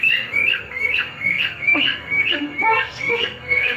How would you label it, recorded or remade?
remade